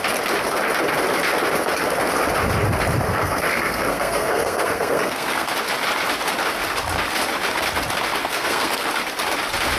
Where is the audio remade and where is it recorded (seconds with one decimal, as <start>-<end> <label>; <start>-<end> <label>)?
0.0-3.1 recorded; 3.1-5.5 remade; 5.5-8.2 recorded; 8.2-8.9 remade; 8.9-9.8 recorded